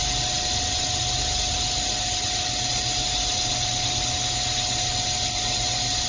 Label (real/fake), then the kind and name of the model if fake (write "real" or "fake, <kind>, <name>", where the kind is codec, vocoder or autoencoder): real